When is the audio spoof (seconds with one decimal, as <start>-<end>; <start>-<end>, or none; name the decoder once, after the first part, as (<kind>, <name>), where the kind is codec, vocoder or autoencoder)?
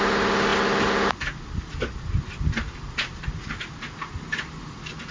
none